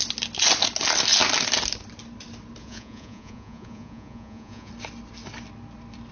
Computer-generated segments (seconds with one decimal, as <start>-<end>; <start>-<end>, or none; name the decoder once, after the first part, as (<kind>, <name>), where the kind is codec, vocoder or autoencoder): 2.6-4.7 (vocoder, Vocos)